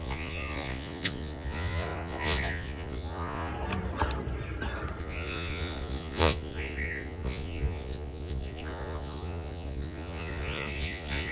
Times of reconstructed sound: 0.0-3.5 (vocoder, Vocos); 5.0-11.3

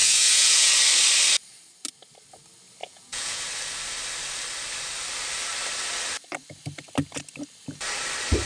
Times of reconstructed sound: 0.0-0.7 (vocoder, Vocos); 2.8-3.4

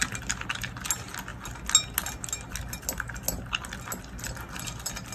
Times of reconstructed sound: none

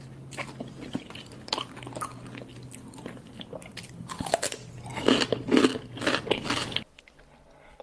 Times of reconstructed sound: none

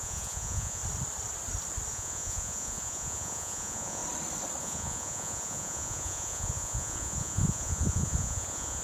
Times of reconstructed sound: 0.0-0.8 (vocoder, Vocos); 1.9-4.0; 4.6-8.8

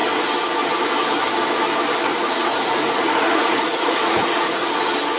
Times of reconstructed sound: 2.1-4.7 (vocoder, Vocos)